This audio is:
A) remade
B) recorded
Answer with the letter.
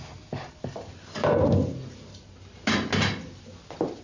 B